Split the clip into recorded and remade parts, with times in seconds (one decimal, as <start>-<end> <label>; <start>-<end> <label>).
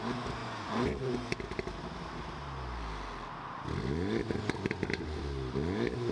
0.0-0.4 recorded; 0.4-1.1 remade; 1.1-6.1 recorded